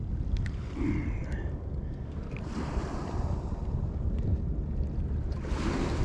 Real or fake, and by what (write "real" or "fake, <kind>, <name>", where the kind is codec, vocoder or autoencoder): real